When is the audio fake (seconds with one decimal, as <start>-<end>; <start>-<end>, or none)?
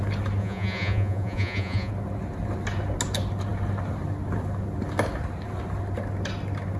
0.4-1.9